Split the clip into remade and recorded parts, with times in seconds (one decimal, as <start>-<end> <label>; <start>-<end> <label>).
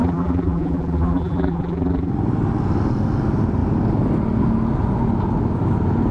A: 0.0-2.1 remade; 2.1-6.1 recorded